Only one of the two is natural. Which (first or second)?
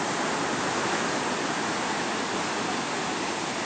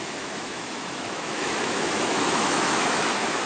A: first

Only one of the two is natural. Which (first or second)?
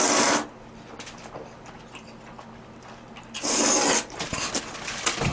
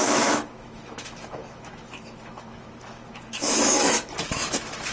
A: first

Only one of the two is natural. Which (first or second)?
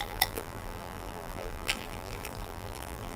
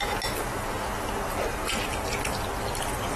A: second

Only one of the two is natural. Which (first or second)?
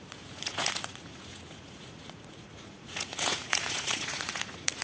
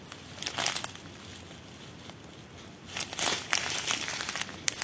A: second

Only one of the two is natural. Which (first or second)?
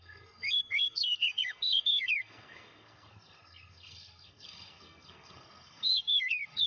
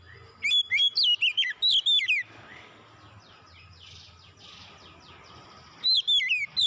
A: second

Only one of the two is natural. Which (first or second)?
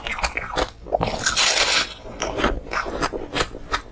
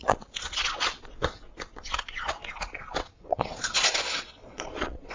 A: first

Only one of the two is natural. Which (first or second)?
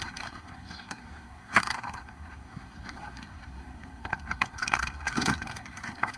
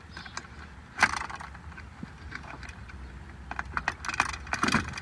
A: second